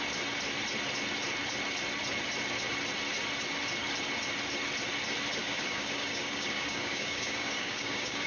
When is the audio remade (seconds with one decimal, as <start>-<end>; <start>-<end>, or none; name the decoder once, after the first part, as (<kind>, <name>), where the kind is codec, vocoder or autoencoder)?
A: 5.4-8.3 (codec, DAC)